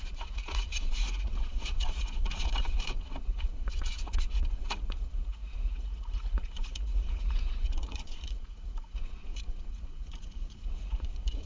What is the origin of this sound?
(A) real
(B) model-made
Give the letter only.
B